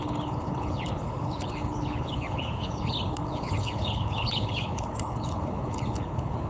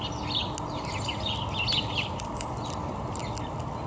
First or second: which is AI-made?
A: first